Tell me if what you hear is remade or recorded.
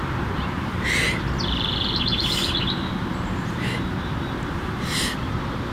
remade